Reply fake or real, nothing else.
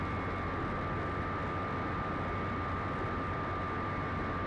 real